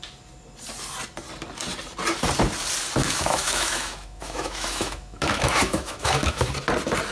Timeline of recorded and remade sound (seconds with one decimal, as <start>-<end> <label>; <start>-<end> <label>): 0.0-3.0 recorded; 3.0-6.5 remade; 6.5-7.1 recorded